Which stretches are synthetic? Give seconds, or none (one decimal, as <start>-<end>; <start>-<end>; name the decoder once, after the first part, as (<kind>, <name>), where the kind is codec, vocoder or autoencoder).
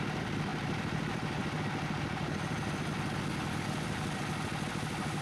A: 0.5-1.6 (vocoder, BigVGAN v2)